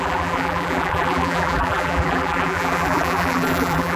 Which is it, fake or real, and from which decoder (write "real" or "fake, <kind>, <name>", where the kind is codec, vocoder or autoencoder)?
fake, vocoder, BigVGAN v2